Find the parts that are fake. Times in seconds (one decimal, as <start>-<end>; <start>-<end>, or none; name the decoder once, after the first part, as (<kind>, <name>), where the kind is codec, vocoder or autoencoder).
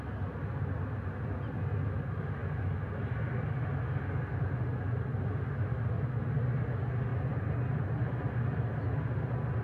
none